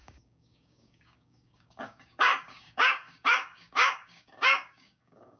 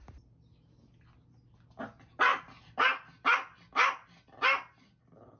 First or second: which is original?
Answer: second